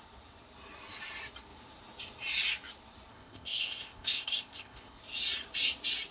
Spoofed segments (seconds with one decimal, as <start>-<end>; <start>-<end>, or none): 3.1-5.0